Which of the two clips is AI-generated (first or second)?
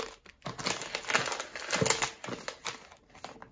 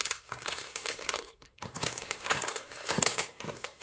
second